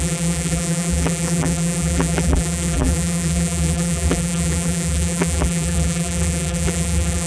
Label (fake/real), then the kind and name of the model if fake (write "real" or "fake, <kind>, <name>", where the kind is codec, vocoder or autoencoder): fake, vocoder, BigVGAN v2